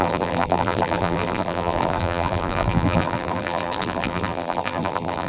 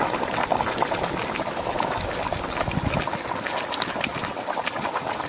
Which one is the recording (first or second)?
second